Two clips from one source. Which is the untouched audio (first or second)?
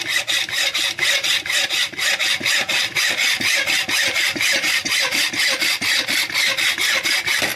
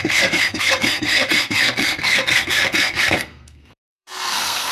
first